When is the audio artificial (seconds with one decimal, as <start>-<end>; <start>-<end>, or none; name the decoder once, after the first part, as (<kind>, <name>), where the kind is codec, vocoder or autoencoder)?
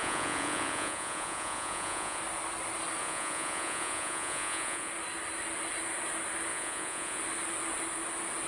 0.0-2.2 (vocoder, Vocos); 3.0-4.9; 6.5-7.2